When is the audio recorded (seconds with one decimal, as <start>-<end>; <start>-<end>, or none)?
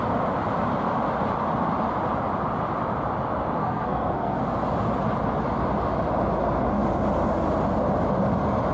0.0-3.6; 4.4-8.7